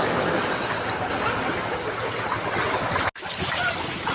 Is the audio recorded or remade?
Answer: recorded